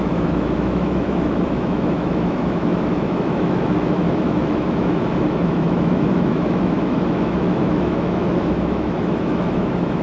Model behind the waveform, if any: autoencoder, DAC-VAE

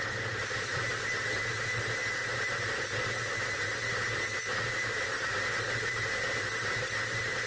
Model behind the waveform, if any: none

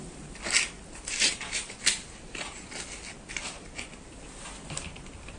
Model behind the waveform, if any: none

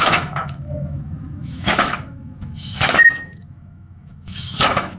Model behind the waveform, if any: autoencoder, DAC-VAE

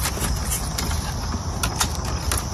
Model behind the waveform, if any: none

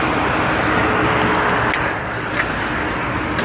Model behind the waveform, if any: none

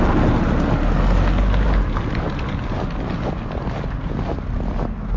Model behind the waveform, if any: none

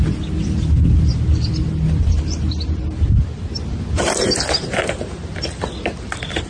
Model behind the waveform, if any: none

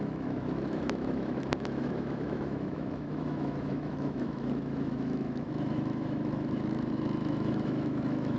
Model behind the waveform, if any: autoencoder, DAC-VAE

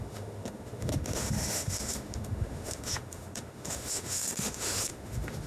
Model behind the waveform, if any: autoencoder, DAC-VAE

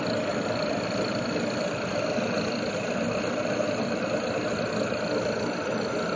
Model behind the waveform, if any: none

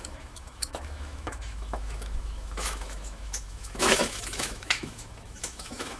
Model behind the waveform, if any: autoencoder, DAC-VAE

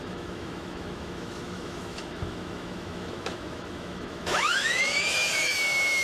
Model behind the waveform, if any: autoencoder, DAC-VAE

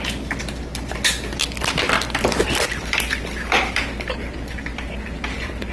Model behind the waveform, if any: none